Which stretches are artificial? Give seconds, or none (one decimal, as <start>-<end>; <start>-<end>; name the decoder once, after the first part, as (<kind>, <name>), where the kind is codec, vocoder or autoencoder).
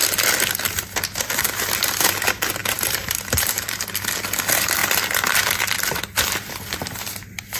2.6-3.8 (vocoder, BigVGAN v2)